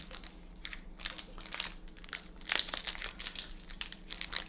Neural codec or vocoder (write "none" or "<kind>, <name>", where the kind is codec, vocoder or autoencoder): none